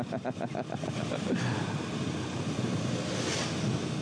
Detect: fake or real real